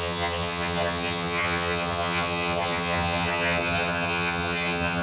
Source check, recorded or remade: remade